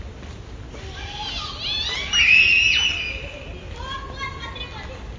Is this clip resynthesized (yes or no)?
no